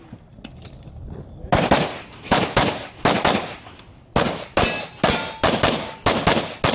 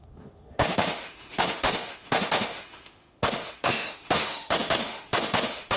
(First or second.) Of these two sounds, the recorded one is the first